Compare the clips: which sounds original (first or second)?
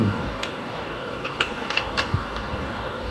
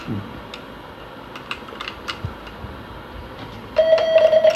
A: second